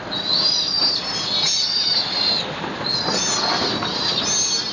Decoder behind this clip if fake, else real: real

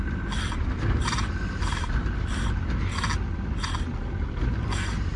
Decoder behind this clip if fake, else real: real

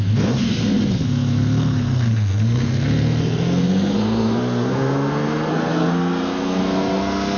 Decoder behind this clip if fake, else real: fake, codec, SNAC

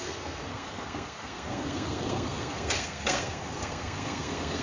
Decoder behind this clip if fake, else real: fake, codec, SNAC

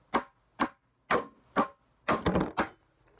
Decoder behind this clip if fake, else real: real